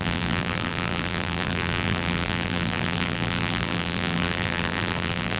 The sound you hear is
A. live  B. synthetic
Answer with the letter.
B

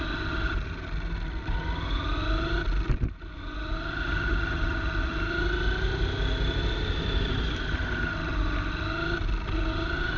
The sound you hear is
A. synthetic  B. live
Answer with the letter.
B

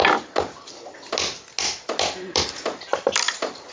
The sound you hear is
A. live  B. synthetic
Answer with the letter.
A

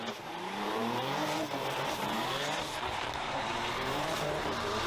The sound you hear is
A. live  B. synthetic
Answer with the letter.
B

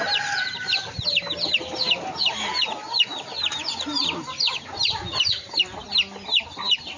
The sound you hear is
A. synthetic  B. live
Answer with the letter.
B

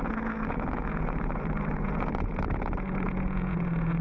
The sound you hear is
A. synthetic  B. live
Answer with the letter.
A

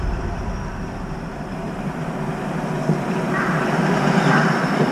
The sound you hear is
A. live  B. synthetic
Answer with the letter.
B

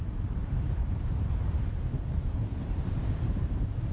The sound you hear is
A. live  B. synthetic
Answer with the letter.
B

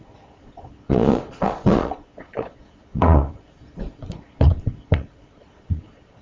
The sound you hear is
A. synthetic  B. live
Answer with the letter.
A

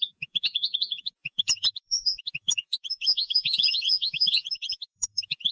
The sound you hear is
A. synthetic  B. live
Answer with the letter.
A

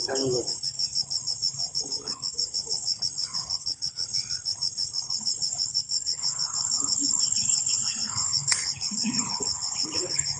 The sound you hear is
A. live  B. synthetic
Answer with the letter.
B